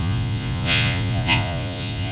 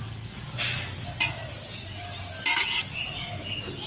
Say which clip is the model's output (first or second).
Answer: first